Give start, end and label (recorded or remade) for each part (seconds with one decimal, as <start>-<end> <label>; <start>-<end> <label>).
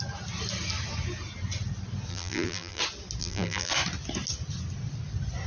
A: 0.0-2.1 recorded; 2.1-2.8 remade; 2.8-3.2 recorded; 3.2-3.7 remade; 3.7-5.5 recorded